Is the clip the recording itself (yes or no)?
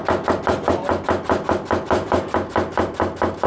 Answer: yes